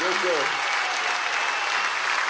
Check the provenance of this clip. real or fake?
real